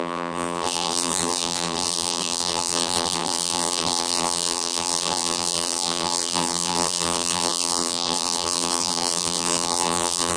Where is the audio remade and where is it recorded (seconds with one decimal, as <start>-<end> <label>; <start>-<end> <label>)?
0.0-10.4 remade